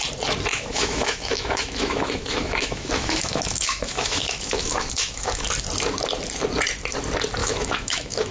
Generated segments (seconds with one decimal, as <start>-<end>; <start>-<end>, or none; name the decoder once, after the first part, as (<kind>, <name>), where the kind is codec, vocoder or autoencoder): 0.5-5.5 (autoencoder, DAC-VAE); 7.4-8.3